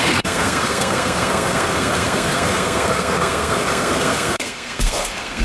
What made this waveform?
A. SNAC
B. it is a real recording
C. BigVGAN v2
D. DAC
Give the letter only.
A